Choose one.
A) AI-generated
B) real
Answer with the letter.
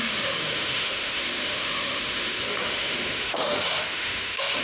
A